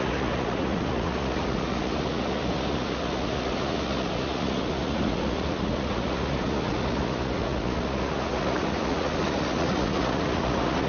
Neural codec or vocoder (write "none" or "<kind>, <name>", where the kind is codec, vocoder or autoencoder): vocoder, Vocos